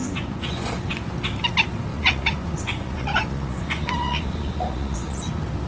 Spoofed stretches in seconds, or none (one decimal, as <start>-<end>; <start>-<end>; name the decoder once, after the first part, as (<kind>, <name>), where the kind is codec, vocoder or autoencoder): 0.0-0.7 (vocoder, Vocos); 1.9-5.3